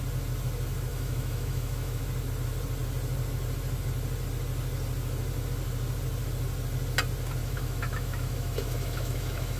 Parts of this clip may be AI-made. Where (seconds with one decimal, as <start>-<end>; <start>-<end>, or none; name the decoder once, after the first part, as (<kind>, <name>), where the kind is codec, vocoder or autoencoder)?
0.9-2.0 (autoencoder, DAC-VAE); 7.4-9.6